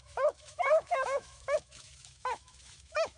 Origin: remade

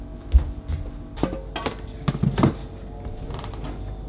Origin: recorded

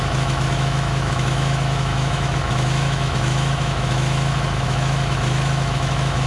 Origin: remade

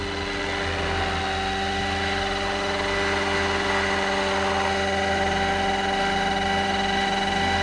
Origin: recorded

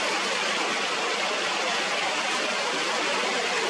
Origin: recorded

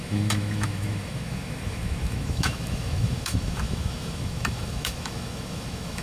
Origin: remade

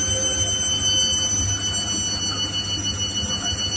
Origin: recorded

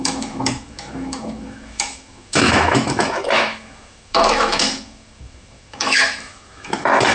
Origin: remade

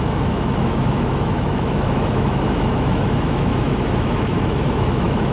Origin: remade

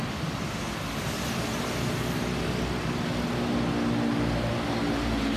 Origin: recorded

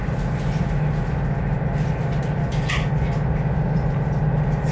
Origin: recorded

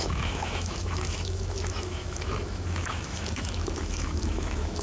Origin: remade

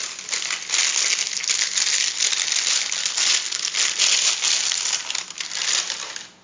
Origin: recorded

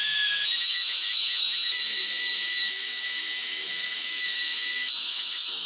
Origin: remade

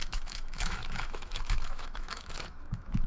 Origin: remade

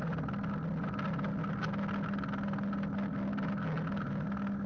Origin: recorded